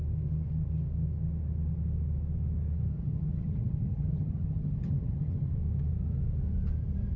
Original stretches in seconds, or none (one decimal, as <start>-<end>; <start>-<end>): 0.0-2.9; 5.5-7.2